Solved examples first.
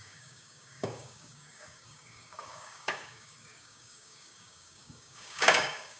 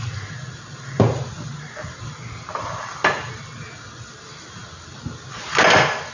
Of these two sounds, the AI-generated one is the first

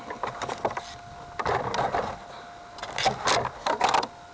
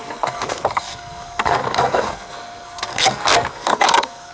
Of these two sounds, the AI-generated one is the second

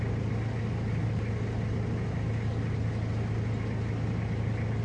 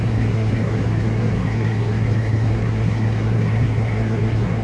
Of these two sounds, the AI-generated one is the second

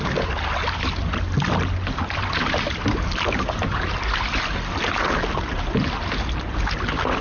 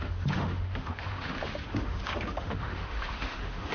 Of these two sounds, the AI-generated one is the second